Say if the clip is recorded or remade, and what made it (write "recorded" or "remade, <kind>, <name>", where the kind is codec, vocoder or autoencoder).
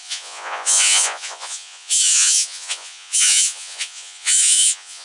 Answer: remade, vocoder, Vocos